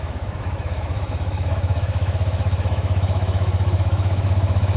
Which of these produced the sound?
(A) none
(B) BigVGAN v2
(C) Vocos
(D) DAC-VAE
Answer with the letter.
D